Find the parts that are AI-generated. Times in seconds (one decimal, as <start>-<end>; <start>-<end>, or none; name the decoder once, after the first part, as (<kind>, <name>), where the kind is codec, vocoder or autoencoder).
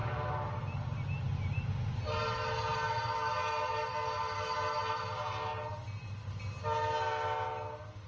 none